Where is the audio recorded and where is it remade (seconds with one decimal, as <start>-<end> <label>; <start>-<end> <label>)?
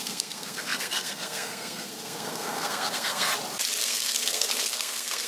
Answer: 0.0-3.3 remade; 3.3-3.8 recorded; 3.8-5.3 remade